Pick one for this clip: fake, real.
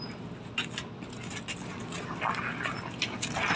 real